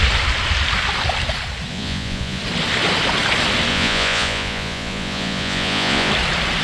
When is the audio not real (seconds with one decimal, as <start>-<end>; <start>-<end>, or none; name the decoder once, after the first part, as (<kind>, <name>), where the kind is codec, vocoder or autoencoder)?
1.7-2.4 (vocoder, Vocos); 3.7-6.1